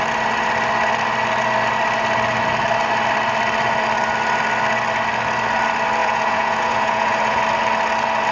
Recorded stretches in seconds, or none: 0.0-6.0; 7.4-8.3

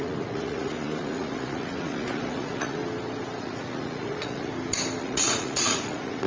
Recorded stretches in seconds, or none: 2.8-3.4; 4.5-5.0

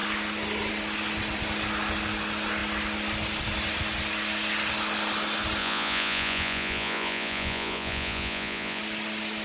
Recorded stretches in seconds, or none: 0.0-5.6; 8.8-9.4